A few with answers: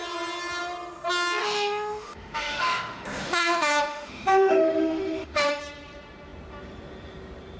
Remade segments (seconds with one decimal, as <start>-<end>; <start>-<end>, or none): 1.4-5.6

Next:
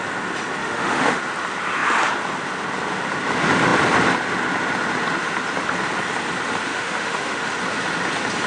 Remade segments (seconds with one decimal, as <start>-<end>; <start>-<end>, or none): 0.6-1.2; 6.7-7.5

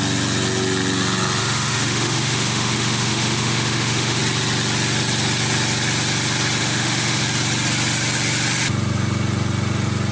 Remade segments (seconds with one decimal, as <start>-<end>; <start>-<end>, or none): 1.4-4.2; 6.6-7.2

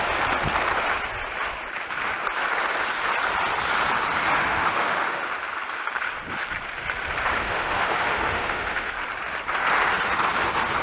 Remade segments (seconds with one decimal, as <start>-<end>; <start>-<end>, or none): 4.4-5.2; 7.4-8.9

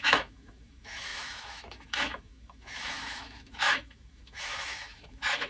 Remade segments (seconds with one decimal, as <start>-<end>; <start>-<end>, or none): 0.0-5.5

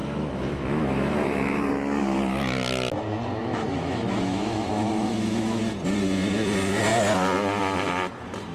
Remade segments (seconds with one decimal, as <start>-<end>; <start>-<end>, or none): 0.0-1.6; 3.4-5.6

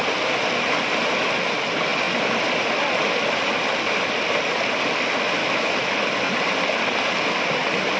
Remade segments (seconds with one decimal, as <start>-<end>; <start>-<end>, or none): 5.4-6.0

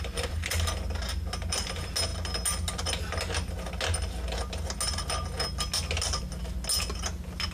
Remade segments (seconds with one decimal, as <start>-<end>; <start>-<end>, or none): none